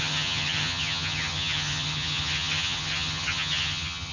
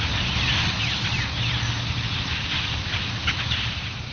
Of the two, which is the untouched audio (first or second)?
second